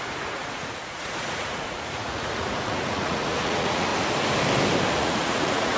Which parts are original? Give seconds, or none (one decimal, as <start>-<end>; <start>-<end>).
3.9-4.9